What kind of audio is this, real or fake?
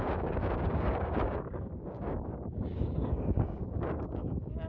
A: fake